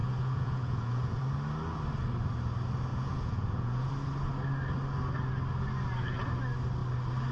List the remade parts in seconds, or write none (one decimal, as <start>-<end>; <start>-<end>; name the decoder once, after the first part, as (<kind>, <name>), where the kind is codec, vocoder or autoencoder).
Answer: 0.0-1.2 (vocoder, Vocos); 2.9-3.9